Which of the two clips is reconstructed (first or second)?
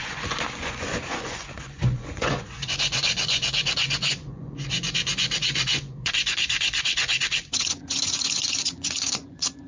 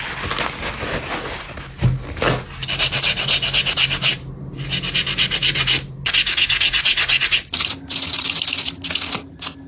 first